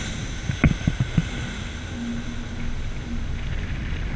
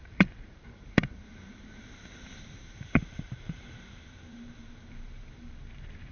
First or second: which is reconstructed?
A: second